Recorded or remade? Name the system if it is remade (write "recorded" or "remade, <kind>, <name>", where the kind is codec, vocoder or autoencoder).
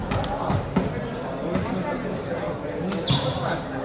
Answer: recorded